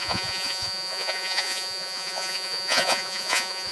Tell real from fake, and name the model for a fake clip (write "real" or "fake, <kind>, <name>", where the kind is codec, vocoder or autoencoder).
fake, vocoder, Vocos